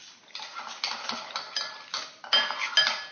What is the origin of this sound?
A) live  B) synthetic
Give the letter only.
A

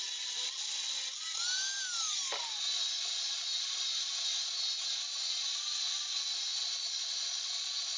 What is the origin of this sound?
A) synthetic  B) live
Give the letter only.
B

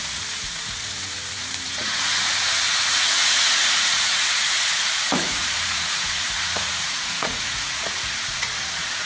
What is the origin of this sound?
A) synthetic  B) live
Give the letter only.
A